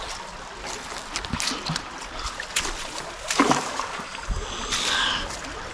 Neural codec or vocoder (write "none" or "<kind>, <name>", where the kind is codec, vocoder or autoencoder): none